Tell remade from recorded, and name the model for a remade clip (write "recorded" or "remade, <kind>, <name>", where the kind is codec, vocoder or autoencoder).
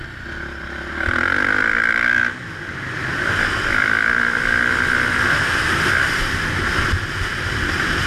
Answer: recorded